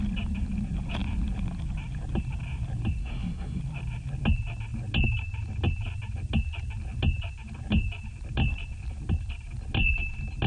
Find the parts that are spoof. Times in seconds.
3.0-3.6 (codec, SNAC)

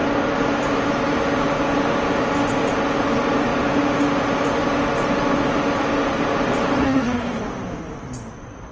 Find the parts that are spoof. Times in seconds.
6.8-7.4 (codec, SNAC)

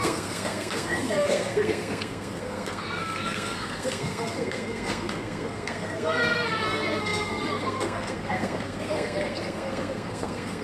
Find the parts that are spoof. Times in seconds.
0.0-10.6 (codec, SNAC)

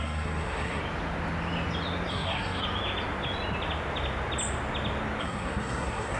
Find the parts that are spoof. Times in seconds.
0.0-0.8 (codec, SNAC); 2.1-2.6; 5.2-6.2

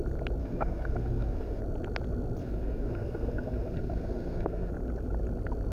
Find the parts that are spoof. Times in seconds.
0.4-1.6 (codec, SNAC); 2.4-4.7

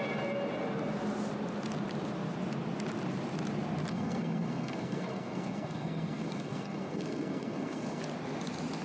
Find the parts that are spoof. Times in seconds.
3.9-8.0 (codec, SNAC)

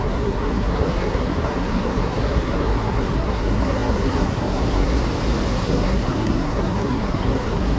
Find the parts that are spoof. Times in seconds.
0.0-5.0 (codec, SNAC); 5.5-7.8

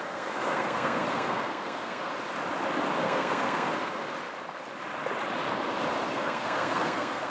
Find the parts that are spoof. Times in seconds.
0.0-2.1 (codec, SNAC); 3.0-4.0; 6.1-7.3